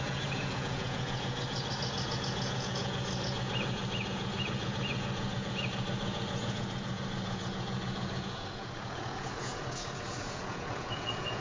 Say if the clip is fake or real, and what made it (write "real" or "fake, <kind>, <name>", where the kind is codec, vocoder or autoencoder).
fake, vocoder, Vocos